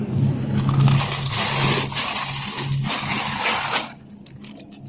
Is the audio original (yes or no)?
yes